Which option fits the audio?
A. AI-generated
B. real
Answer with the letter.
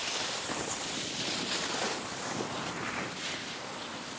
B